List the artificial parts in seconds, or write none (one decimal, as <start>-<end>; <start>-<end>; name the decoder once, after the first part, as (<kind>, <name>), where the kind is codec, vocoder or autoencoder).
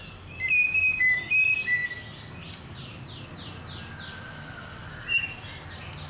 0.6-1.4 (codec, DAC)